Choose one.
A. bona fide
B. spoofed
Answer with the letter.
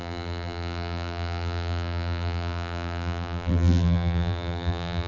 B